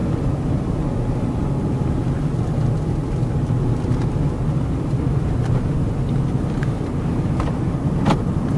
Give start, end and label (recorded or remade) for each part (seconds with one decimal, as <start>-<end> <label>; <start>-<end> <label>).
0.0-8.6 recorded